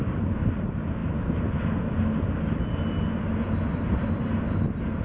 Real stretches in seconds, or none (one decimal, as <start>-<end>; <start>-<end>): 0.0-5.0